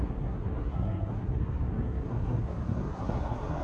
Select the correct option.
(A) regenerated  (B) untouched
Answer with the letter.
A